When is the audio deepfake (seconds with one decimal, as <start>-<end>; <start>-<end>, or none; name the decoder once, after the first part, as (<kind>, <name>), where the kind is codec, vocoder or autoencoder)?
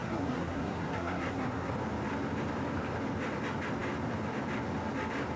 0.0-1.7 (codec, SNAC)